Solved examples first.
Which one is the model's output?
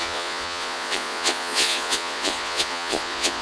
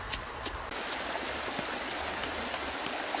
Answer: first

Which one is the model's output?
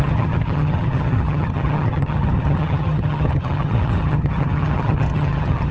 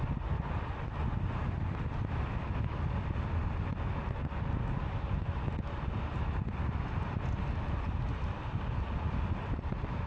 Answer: first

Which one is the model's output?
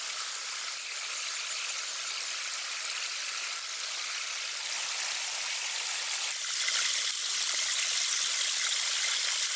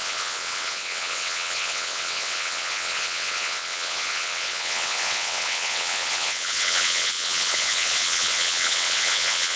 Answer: second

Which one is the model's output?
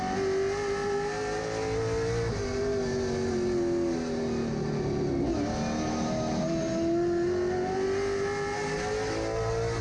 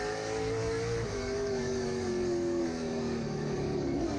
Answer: second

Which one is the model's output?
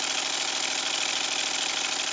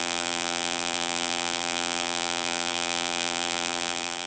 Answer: second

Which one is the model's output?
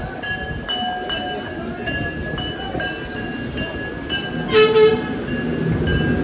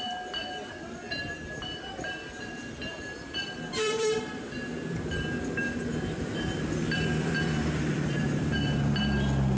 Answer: second